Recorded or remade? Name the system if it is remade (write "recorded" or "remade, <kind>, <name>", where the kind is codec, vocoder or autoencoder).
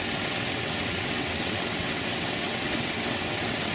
remade, vocoder, WaveNeXt